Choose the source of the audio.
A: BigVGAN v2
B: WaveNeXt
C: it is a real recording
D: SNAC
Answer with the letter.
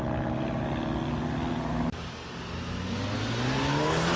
C